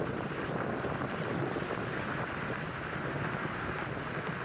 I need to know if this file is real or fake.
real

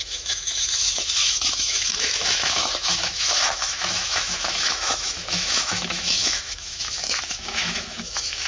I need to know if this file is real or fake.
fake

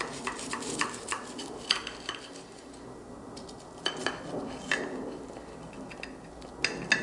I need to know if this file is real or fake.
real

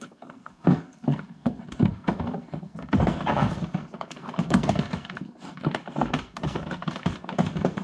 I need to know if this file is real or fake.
fake